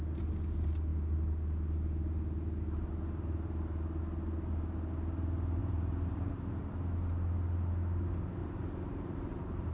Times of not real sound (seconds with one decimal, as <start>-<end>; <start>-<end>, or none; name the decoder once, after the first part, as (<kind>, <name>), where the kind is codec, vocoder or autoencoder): 5.6-6.3 (vocoder, BigVGAN v2); 8.4-9.7